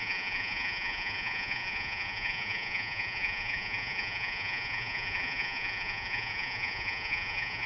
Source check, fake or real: fake